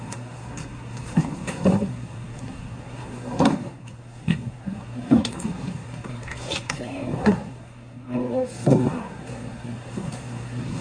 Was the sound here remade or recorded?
remade